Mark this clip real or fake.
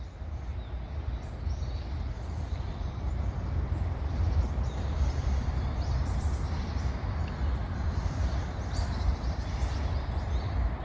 real